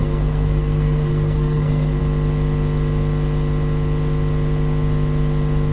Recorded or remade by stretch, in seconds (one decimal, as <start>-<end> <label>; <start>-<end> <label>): 0.0-2.0 remade; 2.0-5.7 recorded